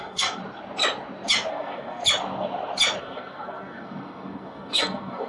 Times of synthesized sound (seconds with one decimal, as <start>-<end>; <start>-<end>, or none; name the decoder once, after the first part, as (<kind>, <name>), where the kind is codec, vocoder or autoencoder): 0.0-0.4 (codec, SNAC); 1.5-2.0; 3.0-5.3